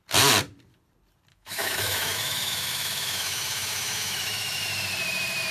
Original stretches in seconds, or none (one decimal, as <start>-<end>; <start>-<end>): 0.0-1.3; 4.6-5.5